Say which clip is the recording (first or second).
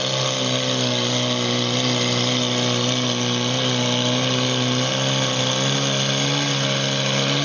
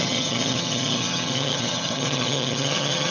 first